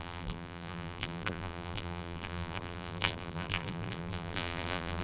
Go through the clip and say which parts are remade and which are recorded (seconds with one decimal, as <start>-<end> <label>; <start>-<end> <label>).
0.0-5.0 remade